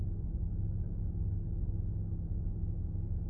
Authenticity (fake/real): real